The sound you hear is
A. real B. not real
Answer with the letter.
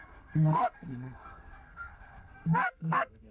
B